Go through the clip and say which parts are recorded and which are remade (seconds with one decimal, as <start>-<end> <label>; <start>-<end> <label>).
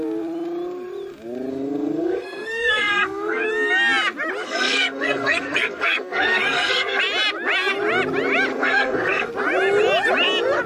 0.0-1.5 recorded; 1.5-3.5 remade; 3.5-4.4 recorded; 4.4-7.0 remade; 7.0-8.5 recorded; 8.5-9.3 remade; 9.3-10.7 recorded